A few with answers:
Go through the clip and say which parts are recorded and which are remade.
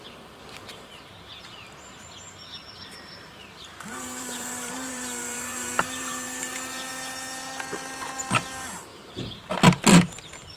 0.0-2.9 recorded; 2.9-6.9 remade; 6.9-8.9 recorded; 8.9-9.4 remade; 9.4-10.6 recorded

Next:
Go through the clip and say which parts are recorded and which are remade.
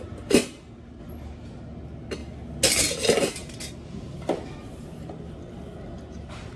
0.0-4.6 recorded; 4.6-5.2 remade; 5.2-6.6 recorded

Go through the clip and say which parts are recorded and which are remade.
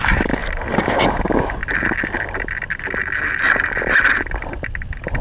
0.0-0.4 recorded; 0.4-1.0 remade; 1.0-5.2 recorded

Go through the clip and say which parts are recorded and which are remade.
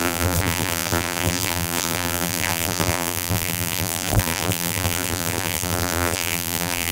0.0-6.9 remade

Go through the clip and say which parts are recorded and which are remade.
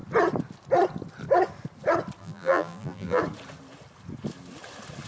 0.0-2.2 recorded; 2.2-3.2 remade; 3.2-5.1 recorded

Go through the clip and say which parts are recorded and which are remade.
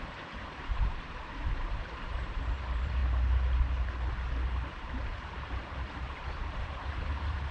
0.0-3.0 remade; 3.0-4.7 recorded; 4.7-7.5 remade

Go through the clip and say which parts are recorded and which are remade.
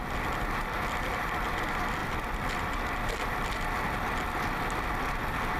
0.0-2.0 recorded; 2.0-3.4 remade; 3.4-5.6 recorded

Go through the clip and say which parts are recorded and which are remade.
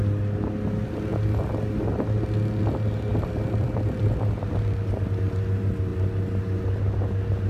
0.0-3.1 recorded; 3.1-4.4 remade; 4.4-7.5 recorded